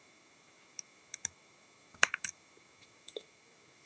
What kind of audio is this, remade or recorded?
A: remade